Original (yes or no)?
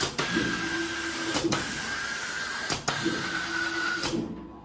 yes